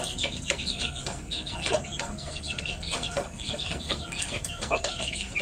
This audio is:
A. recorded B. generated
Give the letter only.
B